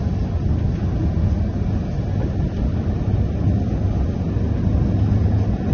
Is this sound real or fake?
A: real